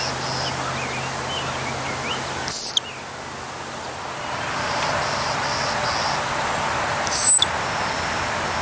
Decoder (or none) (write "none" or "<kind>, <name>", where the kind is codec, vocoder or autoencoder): none